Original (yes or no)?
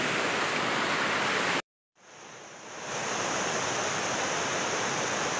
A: no